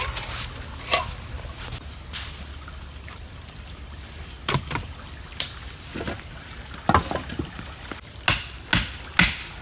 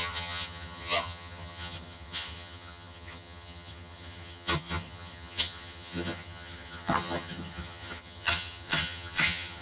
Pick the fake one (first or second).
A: second